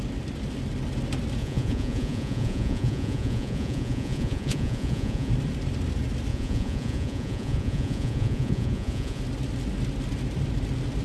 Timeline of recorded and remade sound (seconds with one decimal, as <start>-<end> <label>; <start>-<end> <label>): 0.0-1.4 recorded; 1.4-5.3 remade; 5.3-6.3 recorded; 6.3-9.2 remade; 9.2-11.0 recorded